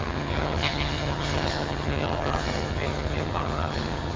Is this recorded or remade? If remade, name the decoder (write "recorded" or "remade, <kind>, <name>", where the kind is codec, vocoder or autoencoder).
remade, vocoder, HiFi-GAN